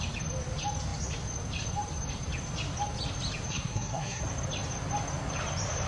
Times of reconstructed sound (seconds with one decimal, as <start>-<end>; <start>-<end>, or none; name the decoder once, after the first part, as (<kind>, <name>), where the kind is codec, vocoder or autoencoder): 3.5-4.2 (codec, SNAC)